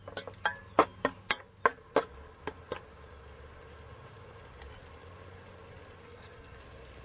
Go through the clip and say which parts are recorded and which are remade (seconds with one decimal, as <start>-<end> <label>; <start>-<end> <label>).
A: 0.0-6.0 recorded; 6.0-6.6 remade; 6.6-7.0 recorded